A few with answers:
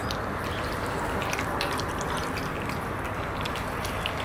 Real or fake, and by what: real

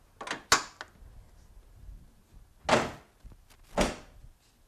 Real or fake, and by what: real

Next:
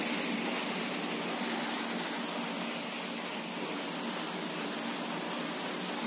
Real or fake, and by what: real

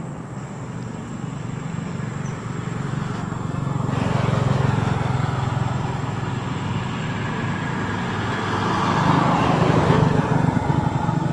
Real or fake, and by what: real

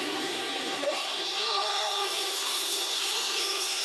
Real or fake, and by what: fake, codec, SNAC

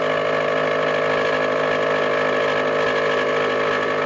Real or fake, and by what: real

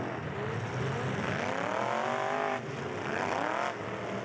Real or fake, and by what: real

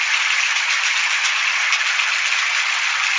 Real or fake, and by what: real